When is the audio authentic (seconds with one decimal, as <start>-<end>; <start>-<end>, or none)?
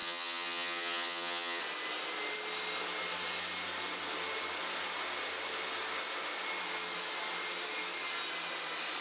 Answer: 1.6-9.0